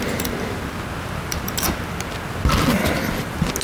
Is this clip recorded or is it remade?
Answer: recorded